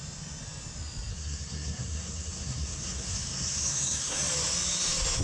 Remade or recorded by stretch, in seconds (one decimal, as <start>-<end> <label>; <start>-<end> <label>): 0.0-1.1 recorded; 1.1-4.2 remade; 4.2-5.2 recorded